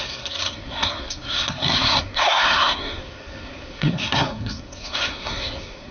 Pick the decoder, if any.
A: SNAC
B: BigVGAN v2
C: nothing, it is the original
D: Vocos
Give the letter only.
A